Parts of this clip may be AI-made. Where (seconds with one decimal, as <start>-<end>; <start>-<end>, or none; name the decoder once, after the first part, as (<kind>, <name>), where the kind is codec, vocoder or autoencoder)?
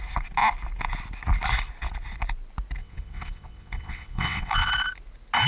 2.8-4.7 (vocoder, WaveNeXt)